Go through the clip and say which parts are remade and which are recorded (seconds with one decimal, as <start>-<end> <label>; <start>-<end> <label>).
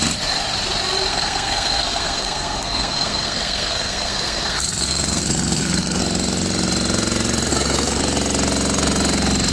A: 0.0-1.1 recorded; 1.1-6.0 remade; 6.0-7.5 recorded; 7.5-8.0 remade; 8.0-9.5 recorded